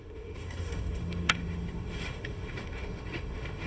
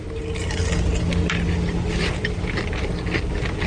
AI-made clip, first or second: first